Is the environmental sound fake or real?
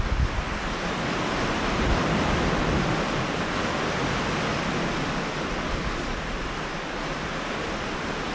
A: real